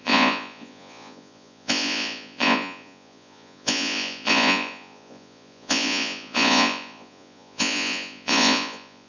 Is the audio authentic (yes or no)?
no